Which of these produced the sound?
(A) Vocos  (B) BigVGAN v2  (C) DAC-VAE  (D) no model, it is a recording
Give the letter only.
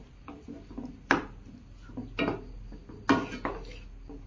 D